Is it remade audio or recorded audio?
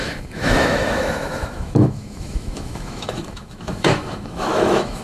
remade